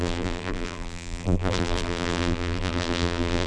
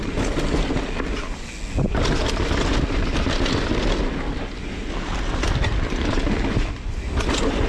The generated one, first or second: first